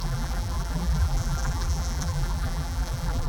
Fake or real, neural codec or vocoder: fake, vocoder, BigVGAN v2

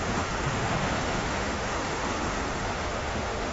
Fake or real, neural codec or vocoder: fake, autoencoder, DAC-VAE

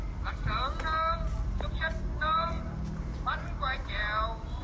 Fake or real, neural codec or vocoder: real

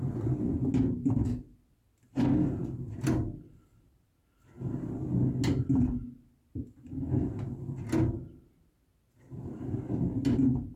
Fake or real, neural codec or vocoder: real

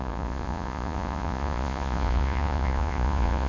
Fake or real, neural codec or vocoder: fake, vocoder, Vocos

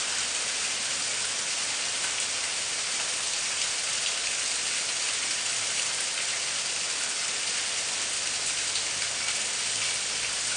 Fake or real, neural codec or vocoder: real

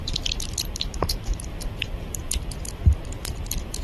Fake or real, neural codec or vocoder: fake, vocoder, BigVGAN v2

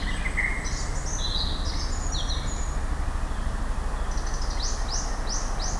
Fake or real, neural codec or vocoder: real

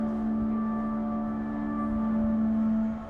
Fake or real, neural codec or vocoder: real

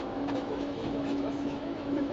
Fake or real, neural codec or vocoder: fake, autoencoder, DAC-VAE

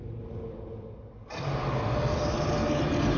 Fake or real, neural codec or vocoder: real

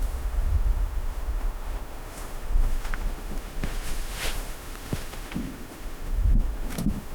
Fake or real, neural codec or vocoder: fake, autoencoder, DAC-VAE